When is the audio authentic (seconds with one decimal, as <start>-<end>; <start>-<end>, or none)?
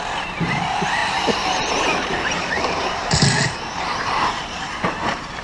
none